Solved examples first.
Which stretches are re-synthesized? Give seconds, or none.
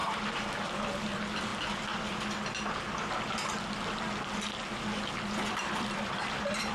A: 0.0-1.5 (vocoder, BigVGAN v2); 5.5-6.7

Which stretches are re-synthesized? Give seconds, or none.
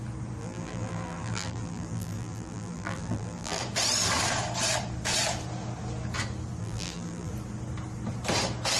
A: 0.4-3.6 (vocoder, BigVGAN v2); 6.6-7.3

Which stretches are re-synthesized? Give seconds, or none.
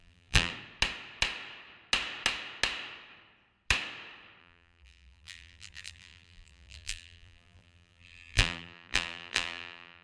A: 0.0-0.5 (vocoder, BigVGAN v2); 4.4-10.0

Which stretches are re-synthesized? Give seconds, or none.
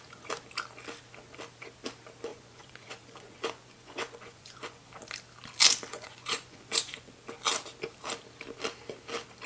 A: 2.3-4.9 (vocoder, Vocos); 5.9-7.1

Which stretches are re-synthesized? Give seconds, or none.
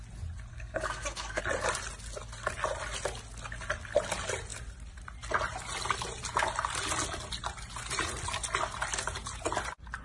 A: 0.5-1.4 (codec, SNAC)